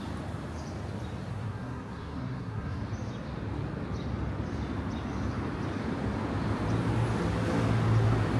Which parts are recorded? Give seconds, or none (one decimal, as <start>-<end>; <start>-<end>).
0.0-1.3; 2.8-8.4